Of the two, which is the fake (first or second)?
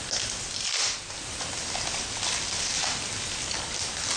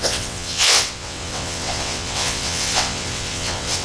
second